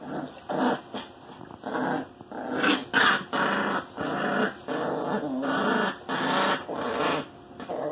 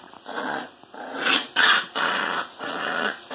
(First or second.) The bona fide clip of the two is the first